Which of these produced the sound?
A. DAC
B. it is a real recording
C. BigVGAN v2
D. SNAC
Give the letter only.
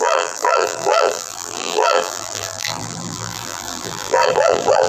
C